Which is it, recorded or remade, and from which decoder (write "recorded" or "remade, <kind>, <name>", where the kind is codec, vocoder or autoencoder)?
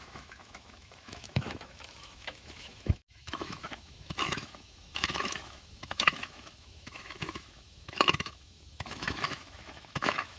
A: remade, autoencoder, DAC-VAE